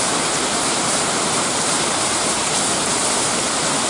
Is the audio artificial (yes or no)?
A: yes